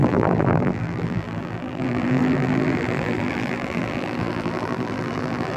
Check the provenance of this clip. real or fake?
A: fake